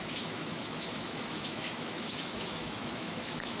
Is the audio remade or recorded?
remade